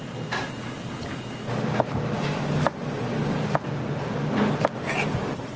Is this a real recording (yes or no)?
yes